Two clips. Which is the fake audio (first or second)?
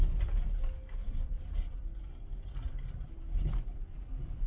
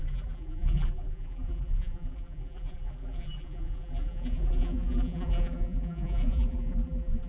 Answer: second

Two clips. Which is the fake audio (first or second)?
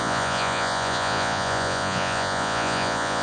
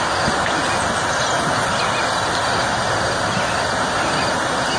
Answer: first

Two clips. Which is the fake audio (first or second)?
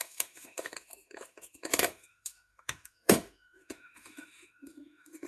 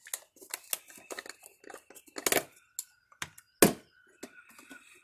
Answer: first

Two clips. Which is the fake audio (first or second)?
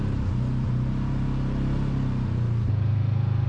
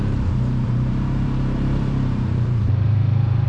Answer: second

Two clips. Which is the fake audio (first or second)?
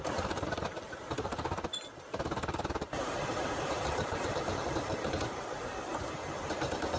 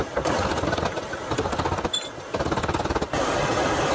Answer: first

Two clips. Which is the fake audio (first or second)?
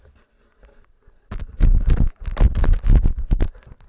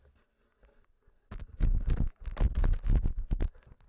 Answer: first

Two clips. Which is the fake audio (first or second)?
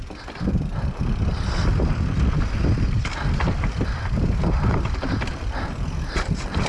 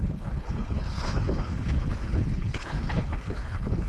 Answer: second